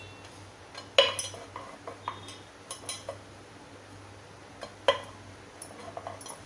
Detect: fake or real real